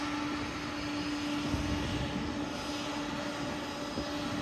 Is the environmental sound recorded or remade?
recorded